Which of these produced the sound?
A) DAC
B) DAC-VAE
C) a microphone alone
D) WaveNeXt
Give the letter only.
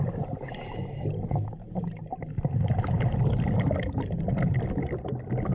C